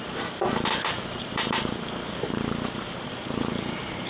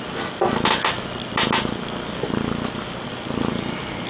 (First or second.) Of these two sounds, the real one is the second